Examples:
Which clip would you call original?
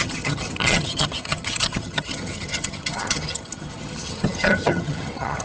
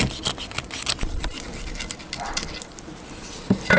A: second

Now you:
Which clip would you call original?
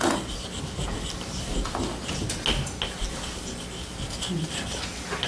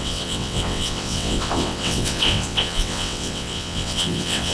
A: first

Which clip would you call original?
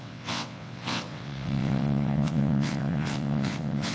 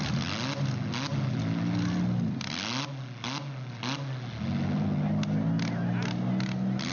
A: second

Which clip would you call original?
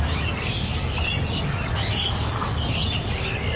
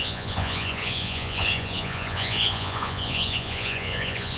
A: first